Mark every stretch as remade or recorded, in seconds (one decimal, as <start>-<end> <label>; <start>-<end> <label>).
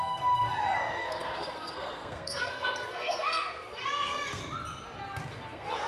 0.0-4.4 remade; 4.4-5.3 recorded; 5.3-5.9 remade